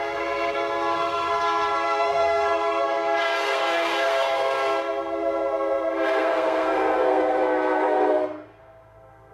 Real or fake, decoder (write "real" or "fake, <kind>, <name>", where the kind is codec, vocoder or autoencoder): fake, codec, SNAC